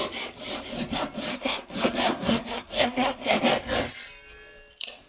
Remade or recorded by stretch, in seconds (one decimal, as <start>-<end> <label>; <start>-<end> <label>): 0.0-1.3 recorded; 1.3-3.4 remade; 3.4-5.1 recorded